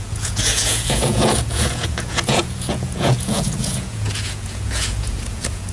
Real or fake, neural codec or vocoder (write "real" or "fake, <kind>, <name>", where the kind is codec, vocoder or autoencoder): fake, vocoder, Vocos